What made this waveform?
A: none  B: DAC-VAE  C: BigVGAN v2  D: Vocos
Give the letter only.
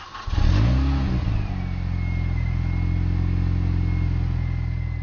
A